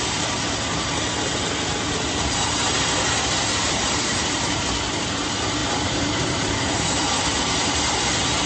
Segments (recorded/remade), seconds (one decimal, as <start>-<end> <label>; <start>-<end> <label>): 0.0-3.8 recorded; 3.8-4.7 remade; 4.7-5.6 recorded; 5.6-7.2 remade; 7.2-8.5 recorded